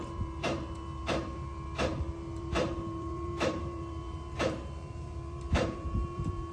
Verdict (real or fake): fake